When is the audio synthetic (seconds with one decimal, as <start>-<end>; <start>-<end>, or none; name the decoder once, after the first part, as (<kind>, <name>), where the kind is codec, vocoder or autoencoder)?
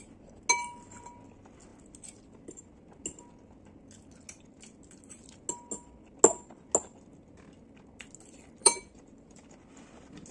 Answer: 8.6-9.4 (vocoder, BigVGAN v2)